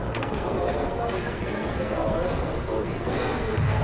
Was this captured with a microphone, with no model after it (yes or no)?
no